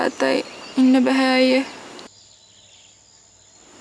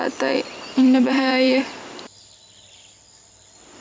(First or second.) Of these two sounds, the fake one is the second